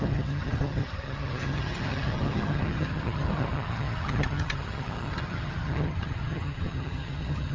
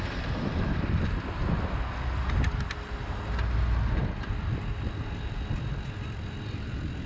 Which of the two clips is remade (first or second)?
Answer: first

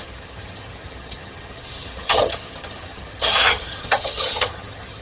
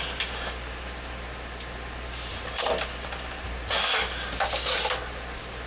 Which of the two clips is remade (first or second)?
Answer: first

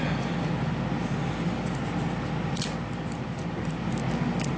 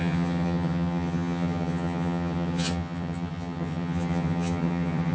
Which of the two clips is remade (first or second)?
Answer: second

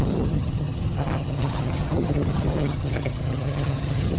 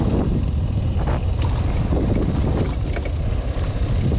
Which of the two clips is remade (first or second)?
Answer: first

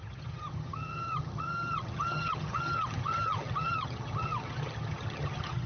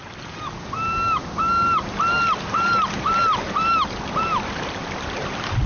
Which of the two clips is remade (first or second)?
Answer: first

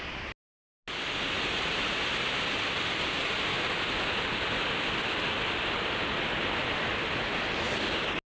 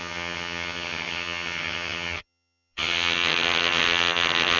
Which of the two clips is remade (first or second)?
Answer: second